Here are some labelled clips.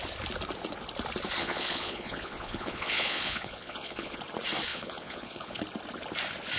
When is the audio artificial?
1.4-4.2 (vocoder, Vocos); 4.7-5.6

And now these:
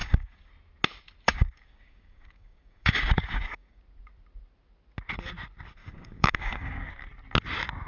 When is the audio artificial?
0.0-0.5 (codec, DAC); 1.3-3.8; 5.8-6.9

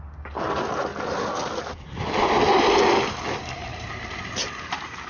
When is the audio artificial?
none